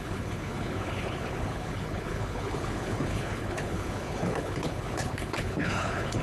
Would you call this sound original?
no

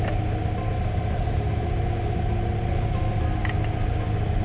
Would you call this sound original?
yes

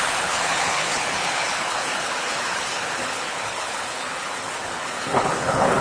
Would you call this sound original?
no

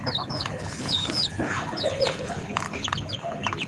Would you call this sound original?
no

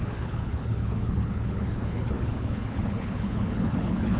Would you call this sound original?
no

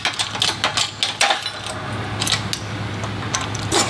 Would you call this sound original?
yes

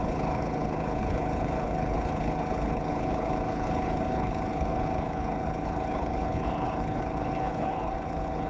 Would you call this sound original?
no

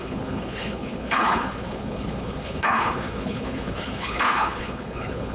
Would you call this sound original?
no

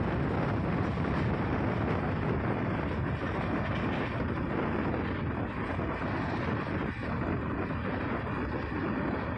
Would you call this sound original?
yes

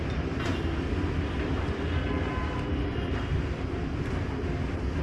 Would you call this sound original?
yes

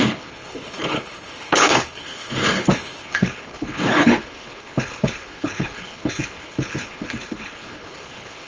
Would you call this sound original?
no